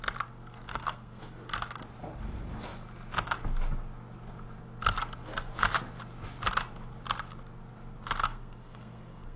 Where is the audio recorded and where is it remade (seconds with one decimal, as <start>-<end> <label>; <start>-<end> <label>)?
0.0-0.7 recorded; 0.7-1.2 remade; 1.2-8.2 recorded; 8.2-9.4 remade